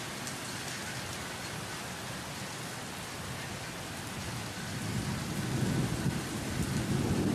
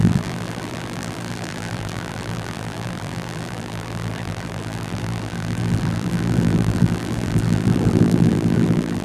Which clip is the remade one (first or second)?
second